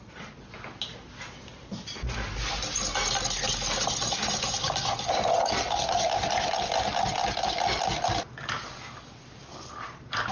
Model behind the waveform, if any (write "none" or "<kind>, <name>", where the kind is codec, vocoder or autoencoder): none